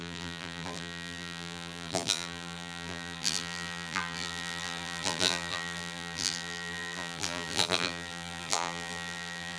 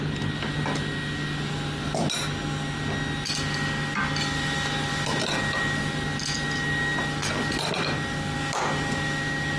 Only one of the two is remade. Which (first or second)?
first